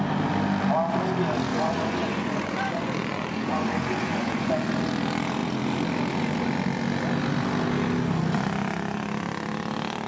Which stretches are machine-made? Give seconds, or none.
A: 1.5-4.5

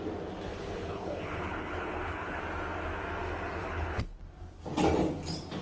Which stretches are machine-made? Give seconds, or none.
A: 0.5-2.4; 3.6-4.2

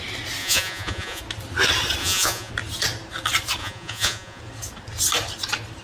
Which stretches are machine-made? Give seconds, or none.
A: 0.4-1.2; 2.0-2.5; 3.6-4.4

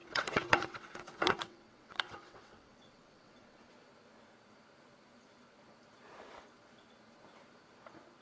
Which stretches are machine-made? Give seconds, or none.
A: 0.0-3.7

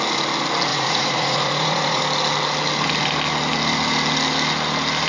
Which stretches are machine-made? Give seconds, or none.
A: 0.7-2.0